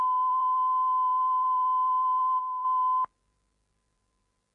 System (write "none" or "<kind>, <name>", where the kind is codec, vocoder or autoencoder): vocoder, BigVGAN v2